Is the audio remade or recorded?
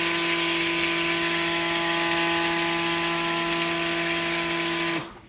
recorded